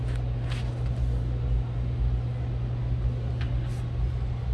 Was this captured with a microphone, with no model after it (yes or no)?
yes